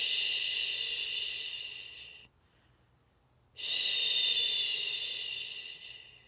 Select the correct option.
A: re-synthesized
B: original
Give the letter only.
B